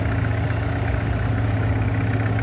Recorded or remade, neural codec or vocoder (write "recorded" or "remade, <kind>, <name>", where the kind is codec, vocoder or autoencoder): recorded